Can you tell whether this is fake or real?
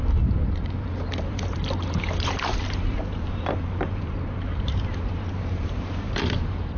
fake